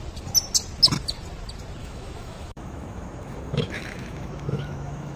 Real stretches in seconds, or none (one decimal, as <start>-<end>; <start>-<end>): 0.0-1.8